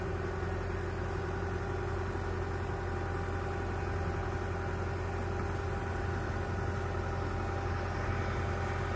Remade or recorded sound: recorded